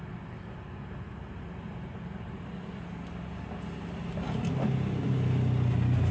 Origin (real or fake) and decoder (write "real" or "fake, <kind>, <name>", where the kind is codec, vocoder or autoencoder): real